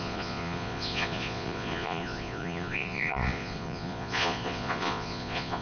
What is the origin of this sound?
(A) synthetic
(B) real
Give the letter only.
A